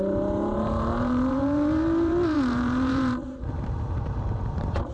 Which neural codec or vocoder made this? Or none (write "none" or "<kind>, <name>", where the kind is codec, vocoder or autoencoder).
vocoder, BigVGAN v2